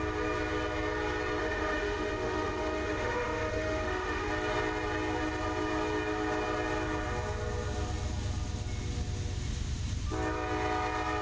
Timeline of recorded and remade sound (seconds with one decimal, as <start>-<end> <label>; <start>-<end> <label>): 0.0-1.4 recorded; 1.4-4.3 remade; 4.3-11.2 recorded